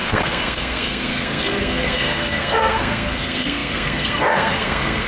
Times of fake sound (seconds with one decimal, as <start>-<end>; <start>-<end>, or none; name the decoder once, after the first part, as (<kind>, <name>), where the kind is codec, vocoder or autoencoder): 0.0-5.1 (codec, SNAC)